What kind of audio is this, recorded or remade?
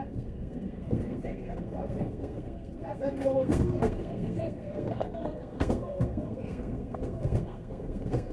remade